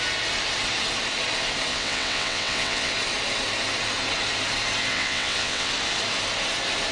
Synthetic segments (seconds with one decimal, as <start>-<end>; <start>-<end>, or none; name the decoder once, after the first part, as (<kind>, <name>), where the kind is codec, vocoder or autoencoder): 1.7-2.9 (vocoder, WaveNeXt); 4.9-5.7